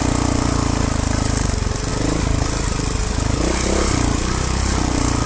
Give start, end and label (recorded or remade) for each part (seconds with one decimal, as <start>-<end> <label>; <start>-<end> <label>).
0.0-5.3 recorded